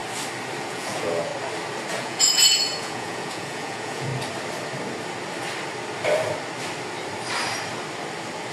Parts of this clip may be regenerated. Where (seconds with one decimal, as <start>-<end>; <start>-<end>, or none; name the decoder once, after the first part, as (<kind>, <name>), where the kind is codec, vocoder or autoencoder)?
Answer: 0.6-1.3 (vocoder, Vocos); 1.9-4.1